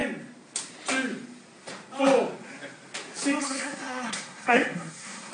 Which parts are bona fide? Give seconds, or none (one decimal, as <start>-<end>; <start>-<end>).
0.0-3.4